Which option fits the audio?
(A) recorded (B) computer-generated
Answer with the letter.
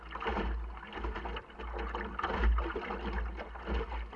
A